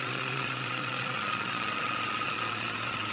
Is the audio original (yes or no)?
no